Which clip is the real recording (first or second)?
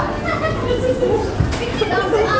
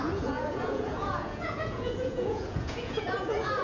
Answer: first